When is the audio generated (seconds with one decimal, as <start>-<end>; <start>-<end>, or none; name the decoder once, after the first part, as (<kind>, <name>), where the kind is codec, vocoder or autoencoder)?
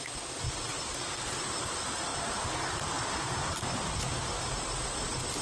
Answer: none